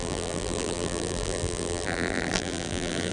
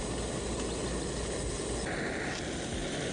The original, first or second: second